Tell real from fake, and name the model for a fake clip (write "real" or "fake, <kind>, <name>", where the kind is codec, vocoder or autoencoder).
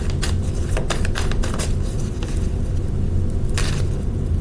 real